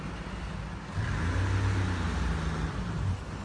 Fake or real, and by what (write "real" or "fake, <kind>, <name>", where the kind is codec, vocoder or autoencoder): real